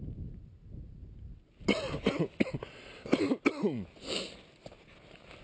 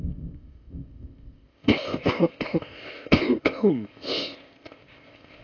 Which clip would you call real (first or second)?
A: first